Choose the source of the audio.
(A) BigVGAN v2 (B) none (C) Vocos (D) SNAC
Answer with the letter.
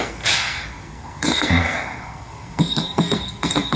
D